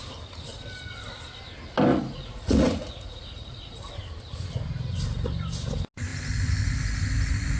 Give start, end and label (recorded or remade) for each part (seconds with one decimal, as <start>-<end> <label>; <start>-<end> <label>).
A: 0.0-1.9 recorded; 1.9-3.9 remade; 3.9-7.6 recorded